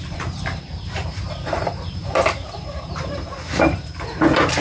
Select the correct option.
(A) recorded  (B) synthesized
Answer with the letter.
B